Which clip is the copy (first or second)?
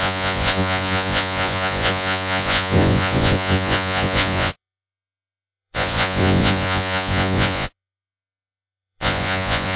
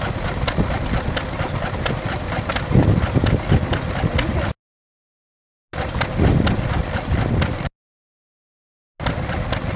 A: first